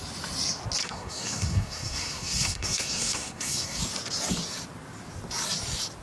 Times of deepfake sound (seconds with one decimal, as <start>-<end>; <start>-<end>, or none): 0.8-3.8